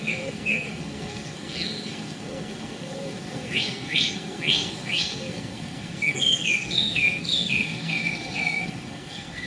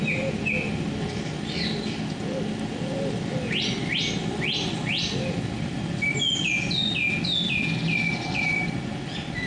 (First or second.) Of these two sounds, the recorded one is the second